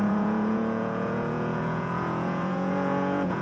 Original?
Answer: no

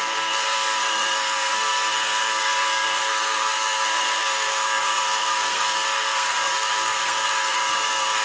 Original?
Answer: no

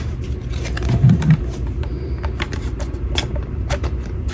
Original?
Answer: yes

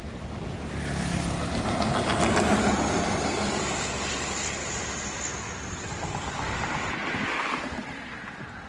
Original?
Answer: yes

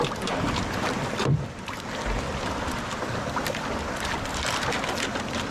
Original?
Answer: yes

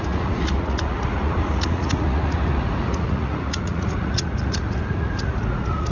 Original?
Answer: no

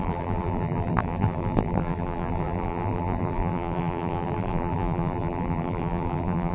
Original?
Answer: no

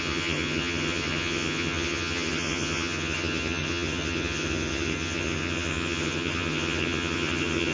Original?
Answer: no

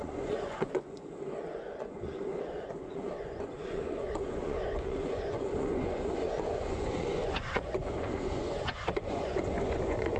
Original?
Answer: no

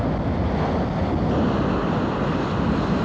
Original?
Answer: yes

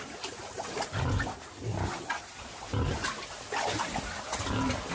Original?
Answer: yes